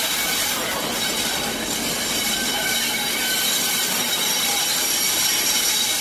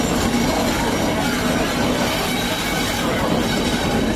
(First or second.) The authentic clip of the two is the second